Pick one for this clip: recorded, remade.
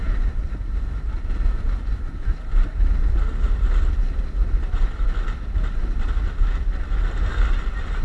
recorded